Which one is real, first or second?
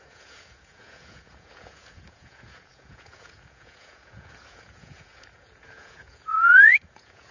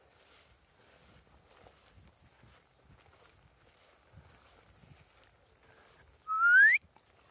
second